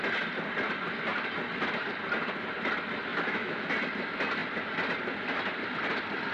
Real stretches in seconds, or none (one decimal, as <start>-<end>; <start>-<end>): 0.0-3.1; 3.7-6.3